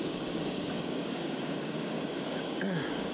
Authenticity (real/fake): fake